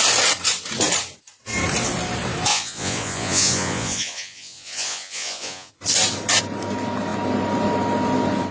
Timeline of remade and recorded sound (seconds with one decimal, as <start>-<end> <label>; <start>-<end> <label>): 0.0-2.5 recorded; 2.5-5.7 remade; 5.7-8.5 recorded